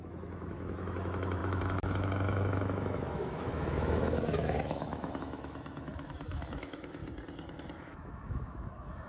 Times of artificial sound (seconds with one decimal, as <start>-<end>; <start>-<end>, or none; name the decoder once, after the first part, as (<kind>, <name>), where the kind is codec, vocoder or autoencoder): 0.0-7.0 (autoencoder, DAC-VAE); 7.8-9.1